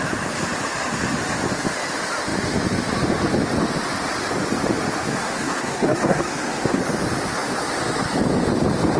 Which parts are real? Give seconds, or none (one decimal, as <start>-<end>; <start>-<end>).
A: 0.0-5.1; 6.8-9.0